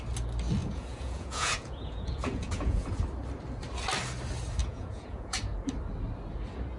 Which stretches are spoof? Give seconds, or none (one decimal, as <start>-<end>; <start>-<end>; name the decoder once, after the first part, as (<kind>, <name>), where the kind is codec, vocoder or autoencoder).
0.6-2.9 (vocoder, Vocos); 4.6-5.4